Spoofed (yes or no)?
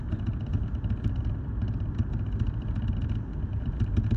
no